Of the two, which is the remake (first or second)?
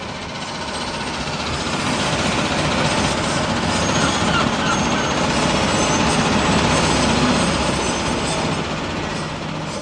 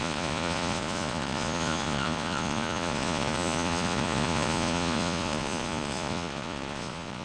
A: second